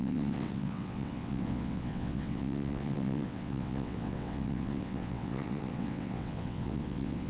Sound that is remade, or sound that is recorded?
remade